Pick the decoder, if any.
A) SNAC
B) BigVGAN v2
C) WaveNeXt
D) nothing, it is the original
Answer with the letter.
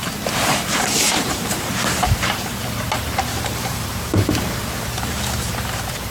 B